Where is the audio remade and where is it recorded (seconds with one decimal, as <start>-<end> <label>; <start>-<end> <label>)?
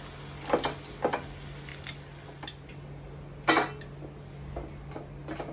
0.0-5.5 recorded